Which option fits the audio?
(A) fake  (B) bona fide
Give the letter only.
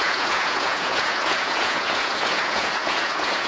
A